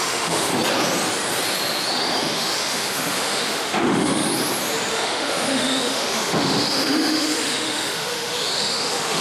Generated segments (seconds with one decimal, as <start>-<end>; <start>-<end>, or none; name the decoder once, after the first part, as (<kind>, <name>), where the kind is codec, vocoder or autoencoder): 0.0-0.5 (autoencoder, DAC-VAE); 2.2-4.3; 4.9-9.2